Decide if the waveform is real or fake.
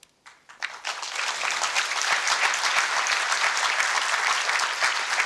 real